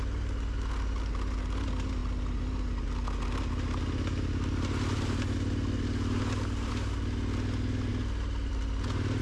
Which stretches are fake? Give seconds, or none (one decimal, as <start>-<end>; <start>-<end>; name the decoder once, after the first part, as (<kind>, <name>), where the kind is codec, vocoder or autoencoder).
none